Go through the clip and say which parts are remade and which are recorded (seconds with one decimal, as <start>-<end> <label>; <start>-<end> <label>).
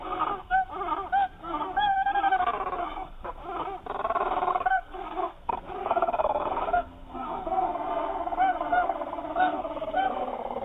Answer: 0.0-0.7 remade; 0.7-1.4 recorded; 1.4-1.9 remade; 1.9-2.8 recorded; 2.8-3.4 remade; 3.4-4.5 recorded; 4.5-10.6 remade